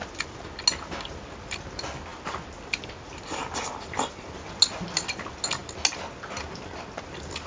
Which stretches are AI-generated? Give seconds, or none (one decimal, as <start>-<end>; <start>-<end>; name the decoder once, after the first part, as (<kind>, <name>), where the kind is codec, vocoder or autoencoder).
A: none